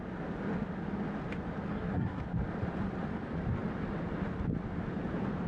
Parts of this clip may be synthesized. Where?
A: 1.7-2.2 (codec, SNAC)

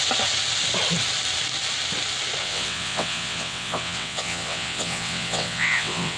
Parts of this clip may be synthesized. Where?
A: 2.4-6.2 (vocoder, WaveNeXt)

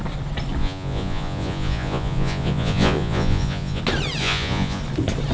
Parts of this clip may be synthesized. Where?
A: 0.6-3.8 (vocoder, Vocos); 4.2-4.8